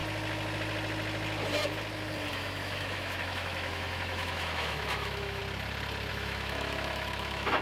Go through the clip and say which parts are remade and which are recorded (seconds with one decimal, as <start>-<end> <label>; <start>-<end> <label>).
0.0-2.3 recorded; 2.3-5.4 remade; 5.4-6.1 recorded; 6.1-7.6 remade